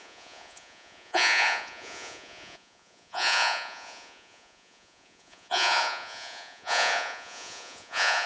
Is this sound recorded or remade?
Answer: remade